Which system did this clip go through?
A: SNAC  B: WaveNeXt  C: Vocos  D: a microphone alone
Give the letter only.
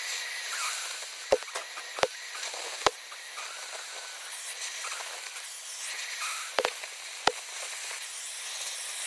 D